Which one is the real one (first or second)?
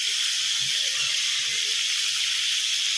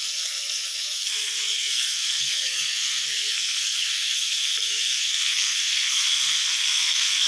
first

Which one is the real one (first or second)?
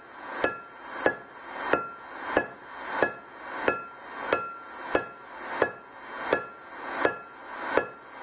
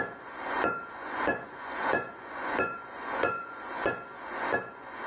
first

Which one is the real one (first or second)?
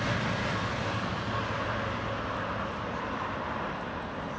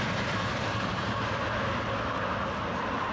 first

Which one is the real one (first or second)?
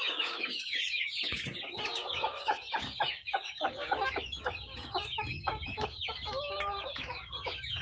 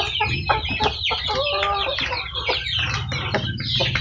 second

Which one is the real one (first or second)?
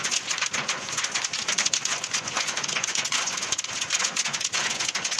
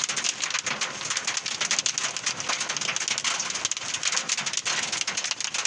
second